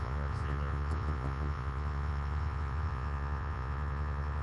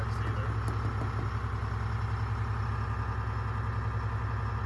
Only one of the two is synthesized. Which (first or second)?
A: first